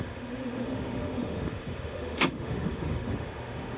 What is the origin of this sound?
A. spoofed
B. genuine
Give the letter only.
A